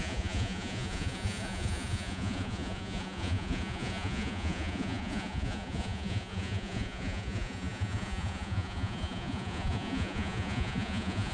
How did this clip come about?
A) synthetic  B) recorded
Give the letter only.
A